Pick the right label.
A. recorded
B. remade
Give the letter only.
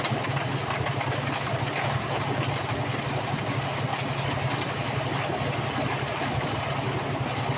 A